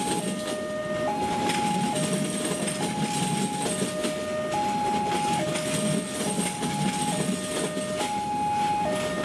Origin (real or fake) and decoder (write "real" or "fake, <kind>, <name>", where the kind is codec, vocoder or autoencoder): real